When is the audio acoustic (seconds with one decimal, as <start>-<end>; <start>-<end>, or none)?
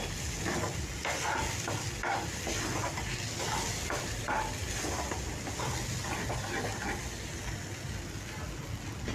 0.0-9.1